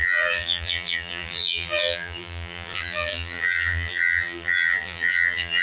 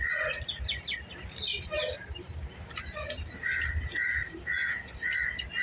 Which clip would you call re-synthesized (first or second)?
first